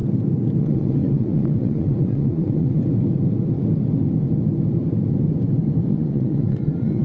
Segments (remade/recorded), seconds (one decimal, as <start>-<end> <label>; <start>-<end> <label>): 0.0-0.6 recorded; 0.6-2.8 remade; 2.8-5.9 recorded; 5.9-7.0 remade

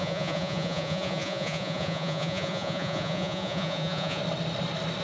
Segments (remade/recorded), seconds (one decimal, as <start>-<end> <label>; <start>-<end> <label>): 0.0-4.2 remade; 4.2-5.0 recorded